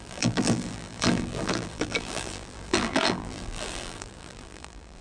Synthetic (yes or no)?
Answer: yes